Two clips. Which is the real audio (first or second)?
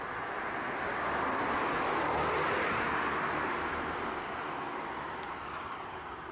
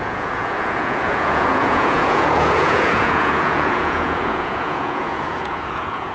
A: first